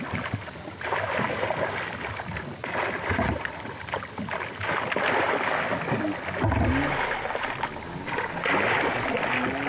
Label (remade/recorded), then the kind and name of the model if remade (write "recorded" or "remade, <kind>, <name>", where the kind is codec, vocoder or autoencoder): recorded